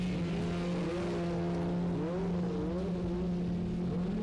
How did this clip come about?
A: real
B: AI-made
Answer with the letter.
A